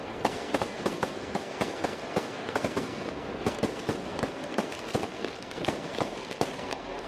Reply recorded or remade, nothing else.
remade